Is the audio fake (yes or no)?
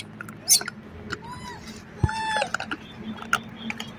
no